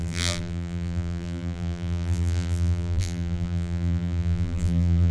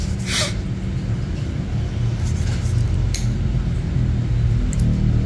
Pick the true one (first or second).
second